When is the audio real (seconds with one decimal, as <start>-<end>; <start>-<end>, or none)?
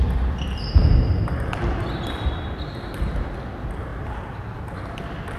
0.0-5.4